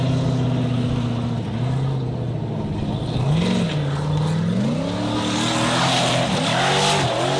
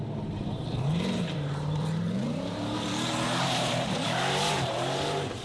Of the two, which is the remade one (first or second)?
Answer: second